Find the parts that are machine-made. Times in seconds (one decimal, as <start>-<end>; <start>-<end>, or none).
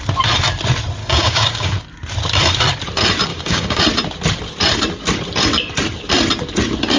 1.0-1.7; 3.3-3.8